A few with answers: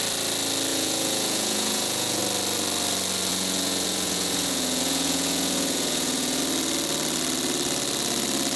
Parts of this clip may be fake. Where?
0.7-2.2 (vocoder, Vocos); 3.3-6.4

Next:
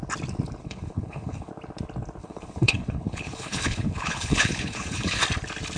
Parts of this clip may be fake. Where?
0.6-1.5 (codec, HILCodec); 2.2-5.2

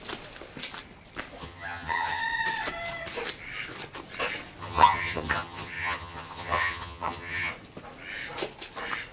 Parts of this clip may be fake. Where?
1.4-2.2 (vocoder, HiFi-GAN); 4.6-7.5

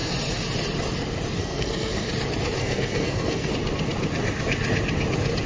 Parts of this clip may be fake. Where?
1.4-2.1 (codec, SNAC); 2.6-3.5

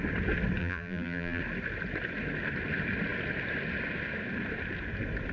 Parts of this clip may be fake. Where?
0.6-1.4 (vocoder, BigVGAN v2)

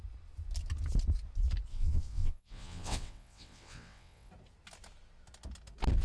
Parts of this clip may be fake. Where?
1.7-4.3 (vocoder, WaveNeXt)

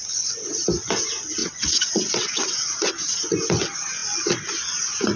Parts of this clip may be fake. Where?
1.4-2.9 (vocoder, WaveNeXt)

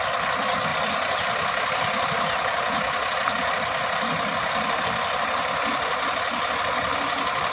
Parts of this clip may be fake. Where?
none